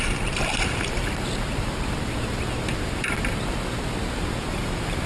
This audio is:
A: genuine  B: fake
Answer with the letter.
A